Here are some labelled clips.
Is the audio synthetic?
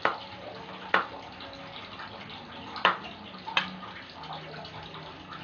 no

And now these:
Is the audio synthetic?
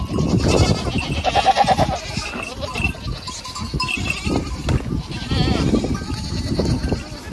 no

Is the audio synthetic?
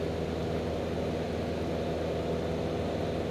no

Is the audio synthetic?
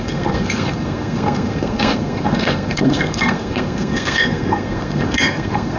yes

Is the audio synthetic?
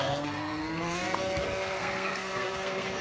yes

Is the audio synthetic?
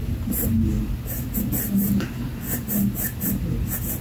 no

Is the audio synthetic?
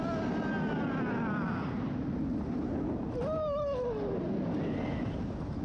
no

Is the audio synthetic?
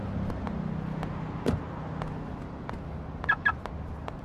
no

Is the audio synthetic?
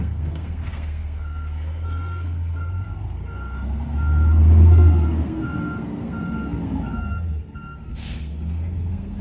yes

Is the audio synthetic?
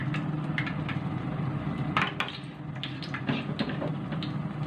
no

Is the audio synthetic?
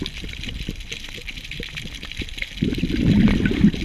no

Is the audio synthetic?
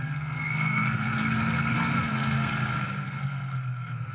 yes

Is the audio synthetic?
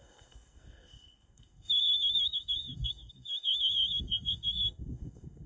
yes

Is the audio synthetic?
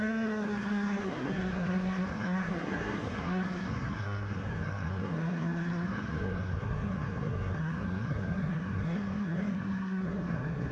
yes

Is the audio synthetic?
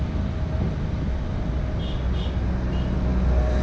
no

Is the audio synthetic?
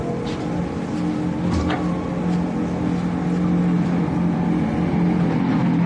no